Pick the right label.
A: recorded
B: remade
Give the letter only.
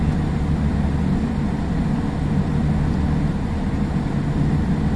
A